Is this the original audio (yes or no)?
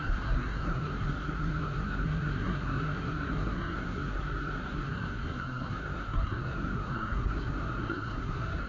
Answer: no